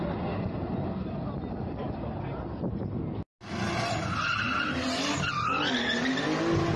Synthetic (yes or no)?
no